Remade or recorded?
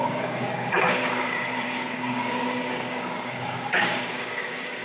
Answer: remade